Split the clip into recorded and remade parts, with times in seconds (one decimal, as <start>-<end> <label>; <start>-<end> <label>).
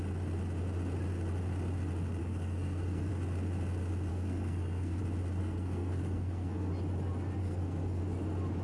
0.0-2.2 recorded; 2.2-3.1 remade; 3.1-4.1 recorded; 4.1-5.0 remade; 5.0-5.4 recorded; 5.4-6.7 remade; 6.7-7.4 recorded; 7.4-8.0 remade; 8.0-8.6 recorded